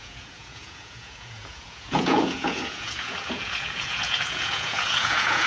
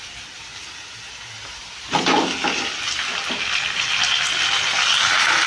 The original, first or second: second